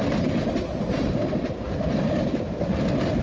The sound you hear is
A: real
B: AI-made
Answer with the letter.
A